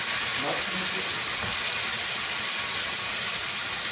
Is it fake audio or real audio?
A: real